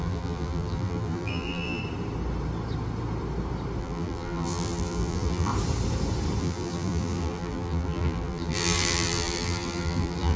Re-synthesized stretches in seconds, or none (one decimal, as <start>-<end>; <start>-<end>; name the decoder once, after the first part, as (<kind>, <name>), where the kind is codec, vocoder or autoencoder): 0.0-1.8 (vocoder, BigVGAN v2); 3.8-5.5; 6.4-10.4